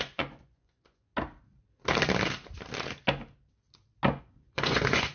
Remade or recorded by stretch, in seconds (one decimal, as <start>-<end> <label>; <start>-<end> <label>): 0.0-1.1 remade; 1.1-4.2 recorded; 4.2-5.1 remade